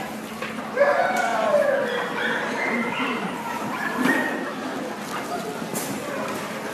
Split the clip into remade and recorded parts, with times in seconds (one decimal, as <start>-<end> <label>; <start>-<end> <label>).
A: 0.0-6.7 recorded